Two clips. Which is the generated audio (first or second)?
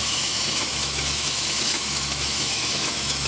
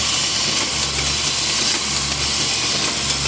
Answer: first